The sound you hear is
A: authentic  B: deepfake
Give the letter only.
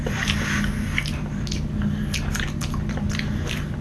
A